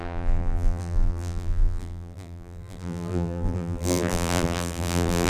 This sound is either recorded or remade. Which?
remade